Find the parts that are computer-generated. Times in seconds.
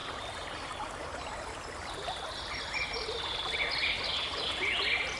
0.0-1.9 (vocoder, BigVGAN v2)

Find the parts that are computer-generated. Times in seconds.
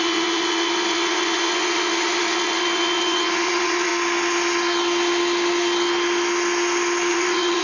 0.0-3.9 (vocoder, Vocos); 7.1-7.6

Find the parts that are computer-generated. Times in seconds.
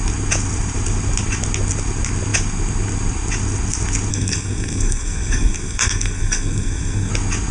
4.1-7.1 (codec, SNAC)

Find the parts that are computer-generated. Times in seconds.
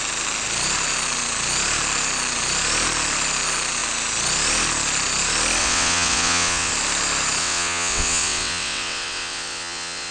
5.6-6.7 (vocoder, WaveNeXt); 7.4-10.1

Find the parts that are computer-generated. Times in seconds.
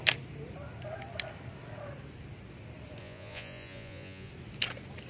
3.0-4.3 (vocoder, Vocos)